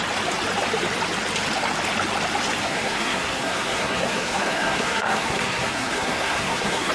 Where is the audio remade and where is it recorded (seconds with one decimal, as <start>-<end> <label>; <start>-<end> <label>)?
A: 0.0-2.6 recorded; 2.6-6.9 remade